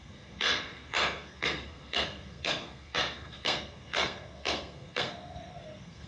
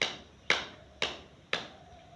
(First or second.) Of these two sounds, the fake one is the first